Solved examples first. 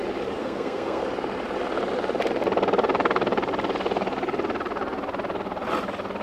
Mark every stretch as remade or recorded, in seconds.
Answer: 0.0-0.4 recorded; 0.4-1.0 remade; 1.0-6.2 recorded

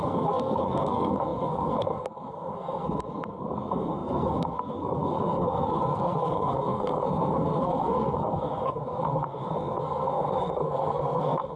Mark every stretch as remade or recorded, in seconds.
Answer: 0.0-11.6 remade